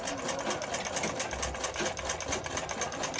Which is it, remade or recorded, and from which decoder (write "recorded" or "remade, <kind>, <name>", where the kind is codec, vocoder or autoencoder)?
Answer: recorded